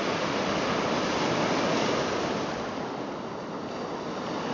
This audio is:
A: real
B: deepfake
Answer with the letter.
A